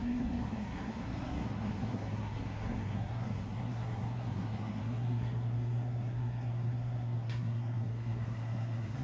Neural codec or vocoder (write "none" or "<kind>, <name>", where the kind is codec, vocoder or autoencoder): codec, SNAC